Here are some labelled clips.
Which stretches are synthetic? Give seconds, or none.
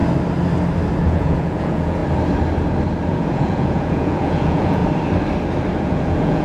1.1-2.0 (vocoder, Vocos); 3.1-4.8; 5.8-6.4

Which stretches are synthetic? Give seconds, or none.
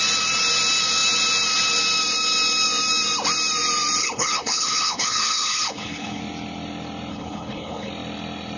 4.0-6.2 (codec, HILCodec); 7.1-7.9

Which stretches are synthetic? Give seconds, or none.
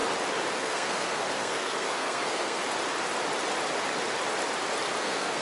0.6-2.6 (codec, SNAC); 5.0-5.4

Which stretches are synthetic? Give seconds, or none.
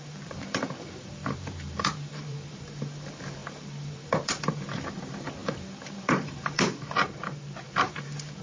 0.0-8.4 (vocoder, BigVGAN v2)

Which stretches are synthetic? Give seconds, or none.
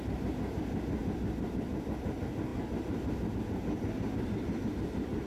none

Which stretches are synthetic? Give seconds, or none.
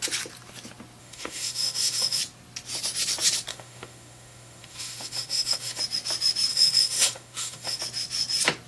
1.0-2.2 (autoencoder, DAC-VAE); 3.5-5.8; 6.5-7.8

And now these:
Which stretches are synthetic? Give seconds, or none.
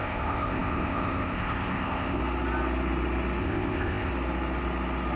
0.0-2.2 (codec, ZipCodec); 3.4-4.1